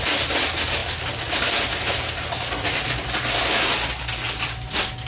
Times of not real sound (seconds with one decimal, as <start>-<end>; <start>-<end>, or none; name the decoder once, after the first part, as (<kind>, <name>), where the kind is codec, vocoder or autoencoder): 0.8-1.7 (vocoder, BigVGAN v2)